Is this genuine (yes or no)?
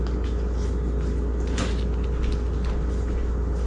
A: yes